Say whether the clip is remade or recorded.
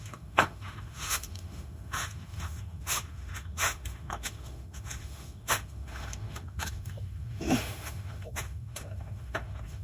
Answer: remade